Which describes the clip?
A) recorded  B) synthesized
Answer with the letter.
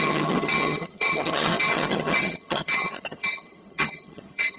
B